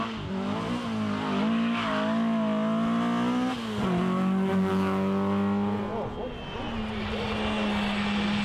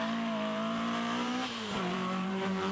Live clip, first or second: first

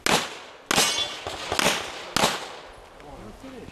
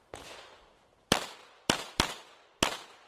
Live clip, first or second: first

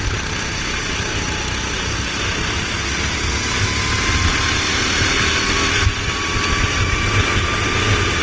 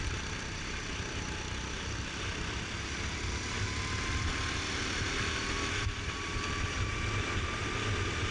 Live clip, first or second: first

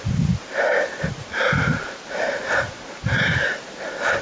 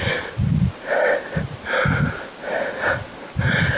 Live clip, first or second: second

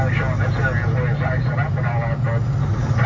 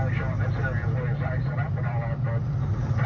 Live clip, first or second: first